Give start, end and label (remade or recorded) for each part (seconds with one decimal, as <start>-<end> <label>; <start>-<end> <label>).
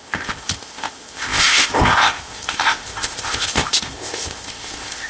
0.0-5.1 remade